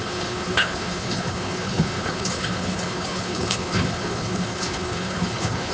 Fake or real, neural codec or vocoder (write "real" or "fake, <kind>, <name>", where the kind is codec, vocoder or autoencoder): fake, codec, HILCodec